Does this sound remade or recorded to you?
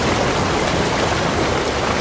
recorded